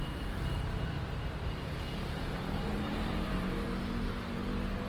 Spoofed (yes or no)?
yes